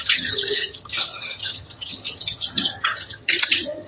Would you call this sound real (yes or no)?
no